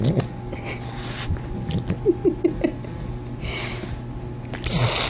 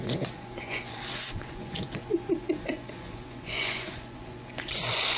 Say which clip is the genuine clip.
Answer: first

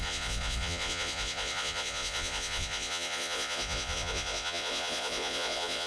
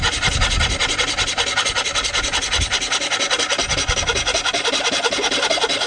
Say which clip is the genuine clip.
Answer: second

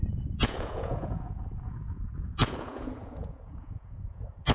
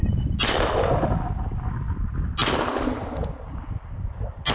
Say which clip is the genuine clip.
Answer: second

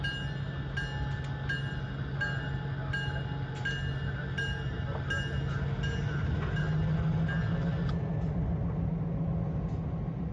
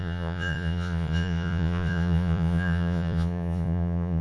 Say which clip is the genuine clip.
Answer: first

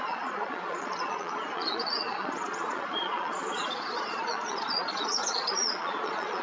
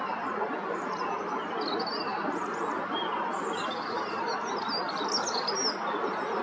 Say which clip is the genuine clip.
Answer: second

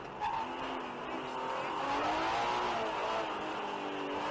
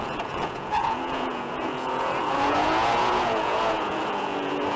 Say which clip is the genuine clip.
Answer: first